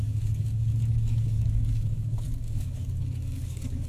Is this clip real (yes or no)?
no